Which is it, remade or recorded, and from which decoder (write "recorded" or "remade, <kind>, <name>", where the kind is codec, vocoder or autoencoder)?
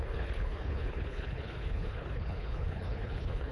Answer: remade, codec, HILCodec